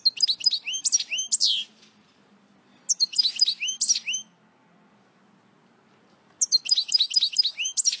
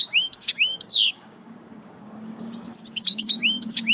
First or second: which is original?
first